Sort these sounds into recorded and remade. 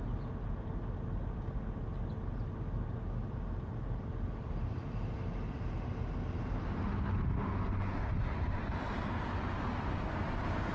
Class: recorded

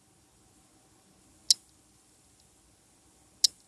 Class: recorded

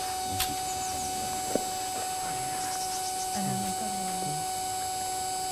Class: recorded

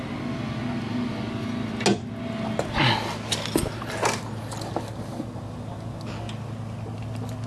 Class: recorded